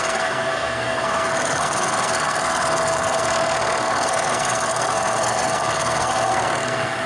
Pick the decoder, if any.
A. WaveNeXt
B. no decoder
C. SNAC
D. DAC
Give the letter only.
C